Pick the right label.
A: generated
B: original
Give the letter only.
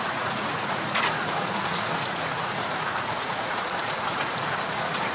A